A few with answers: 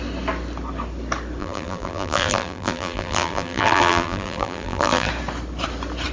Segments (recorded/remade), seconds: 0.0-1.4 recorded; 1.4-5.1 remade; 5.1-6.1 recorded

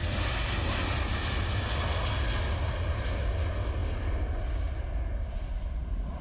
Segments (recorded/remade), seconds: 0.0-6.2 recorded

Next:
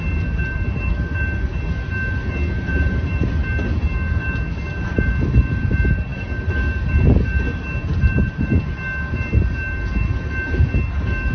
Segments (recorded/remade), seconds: 0.0-2.7 recorded; 2.7-3.3 remade; 3.3-11.3 recorded

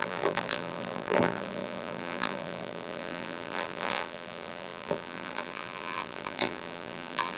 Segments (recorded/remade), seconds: 0.0-7.4 remade

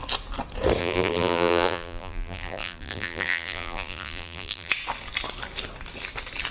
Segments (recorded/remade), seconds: 0.0-0.8 recorded; 0.8-4.7 remade; 4.7-6.5 recorded

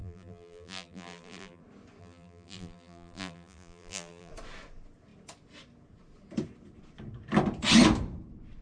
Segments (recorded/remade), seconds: 0.0-1.6 remade; 1.6-2.0 recorded; 2.0-4.3 remade; 4.3-8.6 recorded

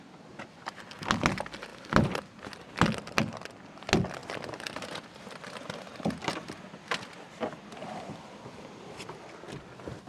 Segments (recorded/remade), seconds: 0.0-1.7 recorded; 1.7-2.7 remade; 2.7-10.1 recorded